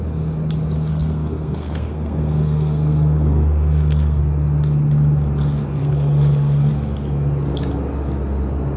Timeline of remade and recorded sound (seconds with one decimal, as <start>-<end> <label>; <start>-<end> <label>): 0.0-0.9 recorded; 0.9-4.2 remade; 4.2-5.8 recorded; 5.8-6.7 remade; 6.7-8.8 recorded